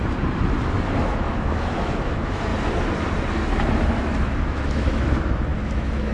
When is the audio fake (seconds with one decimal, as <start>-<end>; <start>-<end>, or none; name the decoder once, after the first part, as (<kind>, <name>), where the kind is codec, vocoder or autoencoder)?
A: 1.0-2.5 (autoencoder, DAC-VAE); 4.0-6.1